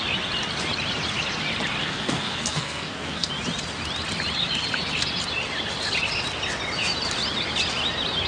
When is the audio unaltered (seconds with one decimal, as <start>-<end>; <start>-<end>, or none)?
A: 0.0-1.8; 3.3-8.3